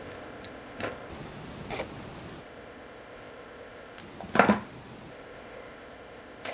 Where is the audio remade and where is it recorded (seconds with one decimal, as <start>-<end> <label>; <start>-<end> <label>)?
0.0-1.1 remade; 1.1-2.4 recorded; 2.4-4.0 remade; 4.0-5.1 recorded; 5.1-6.5 remade